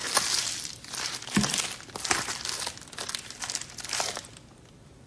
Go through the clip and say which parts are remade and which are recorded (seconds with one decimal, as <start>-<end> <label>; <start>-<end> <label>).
0.0-5.1 recorded